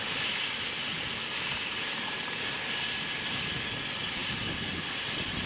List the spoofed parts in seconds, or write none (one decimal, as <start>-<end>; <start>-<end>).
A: none